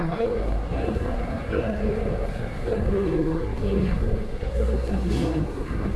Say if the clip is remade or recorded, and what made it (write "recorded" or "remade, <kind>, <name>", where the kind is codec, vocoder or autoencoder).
remade, codec, SNAC